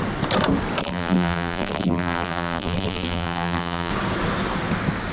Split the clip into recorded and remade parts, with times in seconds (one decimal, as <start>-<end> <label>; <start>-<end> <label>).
0.0-0.8 recorded; 0.8-3.9 remade; 3.9-5.1 recorded